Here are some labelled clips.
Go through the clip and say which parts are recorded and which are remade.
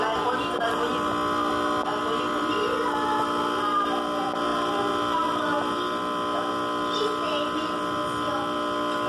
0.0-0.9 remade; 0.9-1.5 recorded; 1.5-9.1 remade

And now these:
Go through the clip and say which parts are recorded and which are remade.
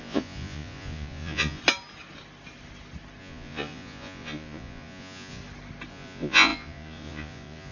0.0-1.6 remade; 1.6-3.2 recorded; 3.2-5.4 remade; 5.4-5.9 recorded; 5.9-7.7 remade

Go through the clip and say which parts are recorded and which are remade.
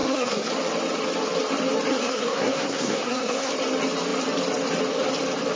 0.0-0.5 remade; 0.5-1.9 recorded; 1.9-3.5 remade; 3.5-5.6 recorded